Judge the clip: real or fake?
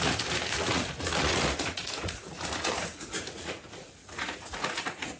fake